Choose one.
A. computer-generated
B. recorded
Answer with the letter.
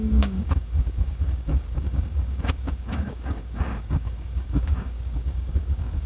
A